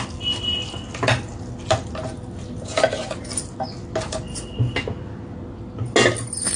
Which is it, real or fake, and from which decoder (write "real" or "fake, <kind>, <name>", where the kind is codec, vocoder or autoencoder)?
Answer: real